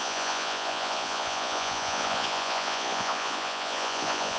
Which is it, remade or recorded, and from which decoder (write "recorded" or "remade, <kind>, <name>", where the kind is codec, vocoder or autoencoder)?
remade, vocoder, Vocos